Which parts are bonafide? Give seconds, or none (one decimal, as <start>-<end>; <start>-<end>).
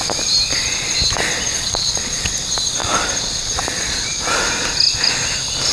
0.0-1.5; 2.3-2.8; 4.2-5.7